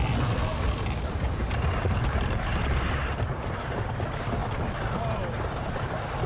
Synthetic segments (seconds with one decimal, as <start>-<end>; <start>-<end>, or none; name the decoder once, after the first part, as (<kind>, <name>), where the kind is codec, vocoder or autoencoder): none